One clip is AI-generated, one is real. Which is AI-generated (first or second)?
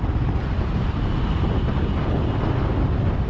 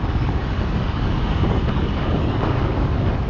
second